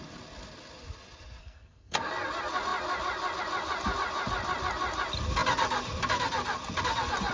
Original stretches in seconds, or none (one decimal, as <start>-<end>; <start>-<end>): 0.0-1.4; 2.1-7.3

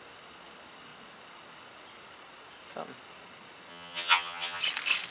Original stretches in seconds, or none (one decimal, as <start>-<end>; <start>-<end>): 0.0-3.7; 4.6-5.1

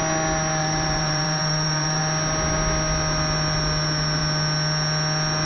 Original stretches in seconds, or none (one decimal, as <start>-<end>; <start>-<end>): 0.0-0.6; 2.0-5.5